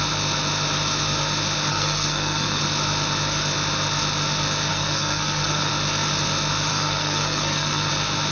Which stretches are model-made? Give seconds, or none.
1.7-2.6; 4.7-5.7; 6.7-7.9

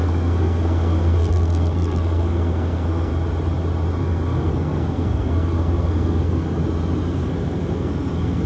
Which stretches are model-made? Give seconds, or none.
0.0-3.1; 4.0-6.6; 7.1-8.5

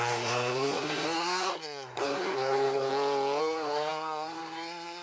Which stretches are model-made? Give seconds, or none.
0.0-2.9; 3.4-5.0

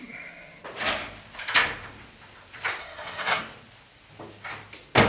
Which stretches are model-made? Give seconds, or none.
2.8-3.4

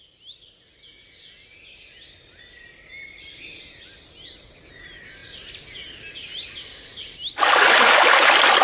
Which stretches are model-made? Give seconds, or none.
none

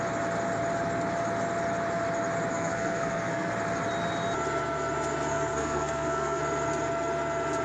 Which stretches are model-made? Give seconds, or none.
2.5-3.5; 5.3-6.4

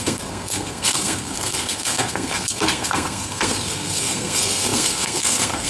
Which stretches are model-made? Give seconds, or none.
0.0-5.7